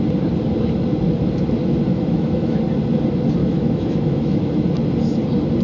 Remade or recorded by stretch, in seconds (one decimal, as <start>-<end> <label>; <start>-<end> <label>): 0.0-1.9 recorded; 1.9-2.6 remade; 2.6-3.4 recorded; 3.4-4.5 remade; 4.5-5.6 recorded